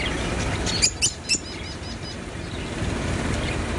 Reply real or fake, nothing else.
real